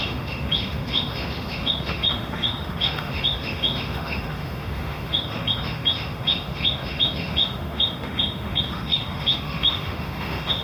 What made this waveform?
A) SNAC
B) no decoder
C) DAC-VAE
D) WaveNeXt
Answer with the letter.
C